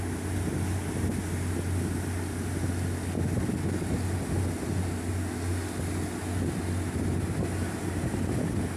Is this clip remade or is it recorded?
recorded